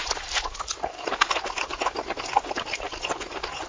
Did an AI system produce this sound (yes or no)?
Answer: yes